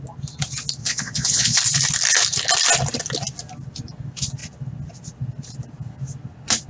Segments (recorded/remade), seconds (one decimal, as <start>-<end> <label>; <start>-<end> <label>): 0.0-0.8 recorded; 0.8-1.6 remade; 1.6-6.7 recorded